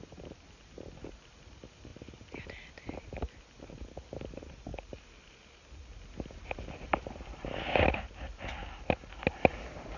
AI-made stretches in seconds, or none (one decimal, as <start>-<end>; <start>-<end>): none